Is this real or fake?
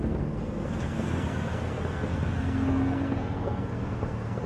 fake